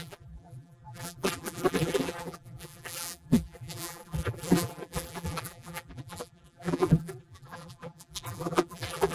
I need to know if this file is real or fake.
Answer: fake